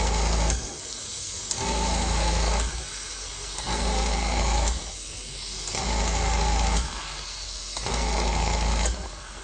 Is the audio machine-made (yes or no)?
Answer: yes